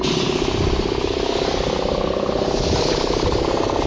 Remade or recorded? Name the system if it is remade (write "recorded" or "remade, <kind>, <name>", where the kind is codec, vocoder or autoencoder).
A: recorded